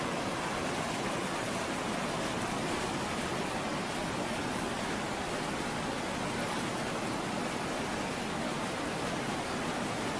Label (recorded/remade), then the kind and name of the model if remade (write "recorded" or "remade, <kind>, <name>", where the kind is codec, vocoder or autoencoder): recorded